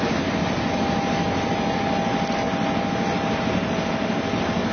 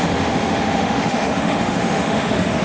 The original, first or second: first